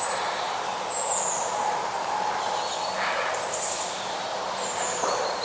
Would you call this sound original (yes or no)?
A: yes